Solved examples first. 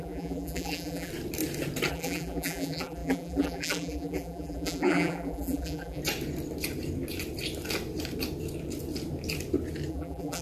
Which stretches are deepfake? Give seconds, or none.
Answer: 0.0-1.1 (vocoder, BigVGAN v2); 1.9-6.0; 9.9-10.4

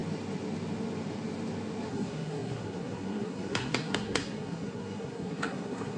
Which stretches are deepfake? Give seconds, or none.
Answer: 1.9-6.0 (codec, SNAC)

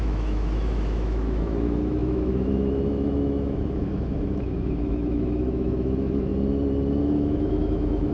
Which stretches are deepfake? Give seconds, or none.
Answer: 0.0-6.3 (autoencoder, DAC-VAE); 7.0-8.1

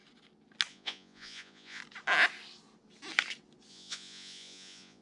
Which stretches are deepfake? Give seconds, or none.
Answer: 0.7-1.8 (vocoder, Vocos); 3.7-5.0

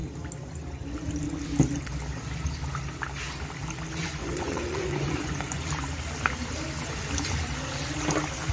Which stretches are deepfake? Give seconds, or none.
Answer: 4.0-5.7 (vocoder, Vocos)